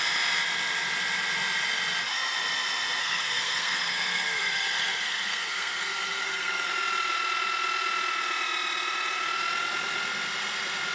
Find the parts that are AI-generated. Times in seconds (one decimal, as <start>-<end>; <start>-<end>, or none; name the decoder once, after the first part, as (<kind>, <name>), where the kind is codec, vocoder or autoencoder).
3.0-6.7 (codec, SNAC)